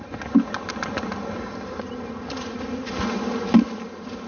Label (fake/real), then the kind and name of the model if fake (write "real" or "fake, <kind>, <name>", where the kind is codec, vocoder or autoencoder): real